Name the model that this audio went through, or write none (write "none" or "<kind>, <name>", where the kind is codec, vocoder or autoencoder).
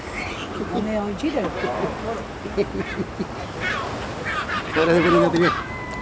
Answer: none